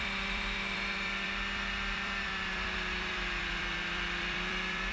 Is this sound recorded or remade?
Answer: remade